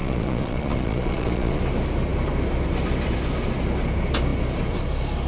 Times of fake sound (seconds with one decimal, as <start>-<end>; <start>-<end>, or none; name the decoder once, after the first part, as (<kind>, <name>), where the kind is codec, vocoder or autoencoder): 0.0-1.6 (vocoder, Vocos)